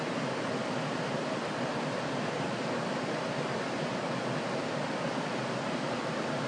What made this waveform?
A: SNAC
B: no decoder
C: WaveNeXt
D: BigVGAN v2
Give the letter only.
B